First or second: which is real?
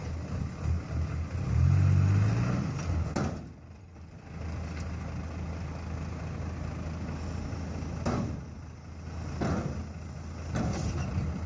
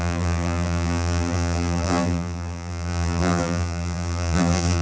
first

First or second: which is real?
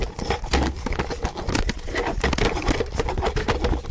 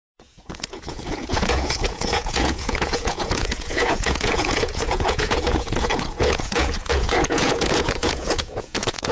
first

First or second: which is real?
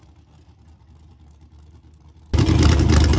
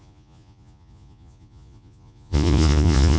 first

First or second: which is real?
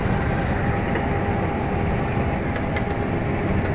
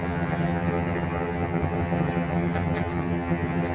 first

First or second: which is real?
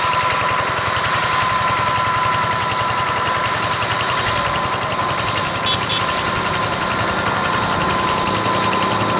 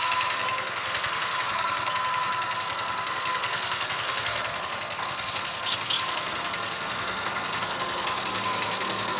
first